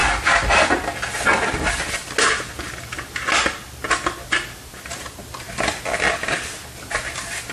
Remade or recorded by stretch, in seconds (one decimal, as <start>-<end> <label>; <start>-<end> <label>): 0.0-7.5 recorded